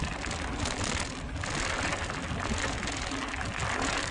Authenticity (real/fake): real